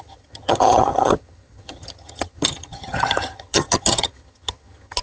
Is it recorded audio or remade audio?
remade